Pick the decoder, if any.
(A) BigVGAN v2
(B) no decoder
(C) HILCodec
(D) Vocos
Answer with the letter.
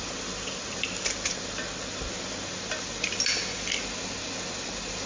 B